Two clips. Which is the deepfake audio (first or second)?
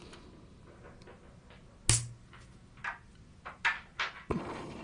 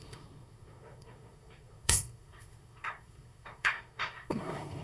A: second